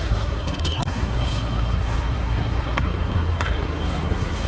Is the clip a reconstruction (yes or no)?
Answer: yes